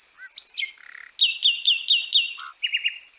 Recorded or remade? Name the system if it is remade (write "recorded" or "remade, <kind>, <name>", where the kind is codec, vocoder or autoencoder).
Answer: recorded